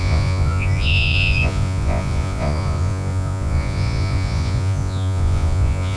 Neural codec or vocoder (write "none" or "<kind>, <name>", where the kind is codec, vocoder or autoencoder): vocoder, Vocos